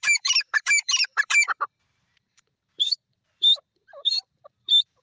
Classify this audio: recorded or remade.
remade